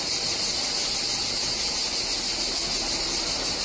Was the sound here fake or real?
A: real